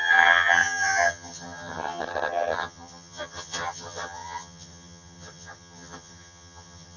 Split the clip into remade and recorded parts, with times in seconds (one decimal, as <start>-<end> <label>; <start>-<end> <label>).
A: 0.0-7.0 remade

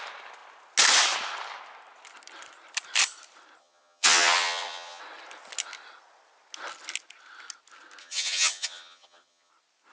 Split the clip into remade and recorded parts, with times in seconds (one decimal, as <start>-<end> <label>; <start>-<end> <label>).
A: 0.0-3.6 recorded; 3.6-5.0 remade; 5.0-8.0 recorded; 8.0-9.5 remade; 9.5-9.9 recorded

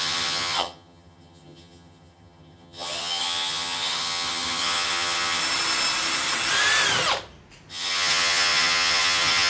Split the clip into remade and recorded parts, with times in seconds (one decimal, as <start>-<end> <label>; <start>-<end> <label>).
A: 0.0-5.4 remade; 5.4-7.7 recorded; 7.7-9.5 remade

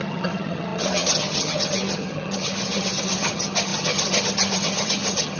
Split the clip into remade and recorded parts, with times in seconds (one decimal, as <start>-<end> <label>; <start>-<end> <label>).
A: 0.0-5.4 remade

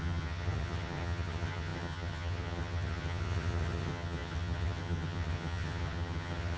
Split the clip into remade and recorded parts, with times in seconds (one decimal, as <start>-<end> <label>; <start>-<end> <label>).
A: 0.0-6.6 remade

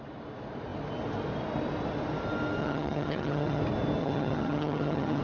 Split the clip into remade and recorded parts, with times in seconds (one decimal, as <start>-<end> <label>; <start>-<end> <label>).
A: 0.0-2.6 recorded; 2.6-3.6 remade; 3.6-4.0 recorded; 4.0-5.2 remade